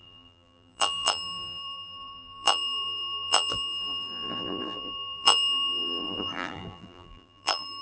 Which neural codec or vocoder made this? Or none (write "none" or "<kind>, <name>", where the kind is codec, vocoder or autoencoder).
vocoder, BigVGAN v2